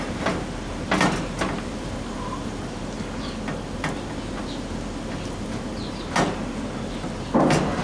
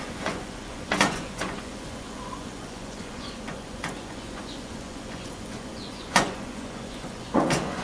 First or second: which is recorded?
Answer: first